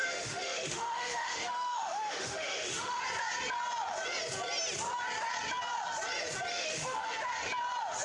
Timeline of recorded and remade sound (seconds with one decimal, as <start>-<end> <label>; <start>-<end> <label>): 0.0-3.0 remade; 3.0-6.5 recorded; 6.5-7.2 remade; 7.2-8.0 recorded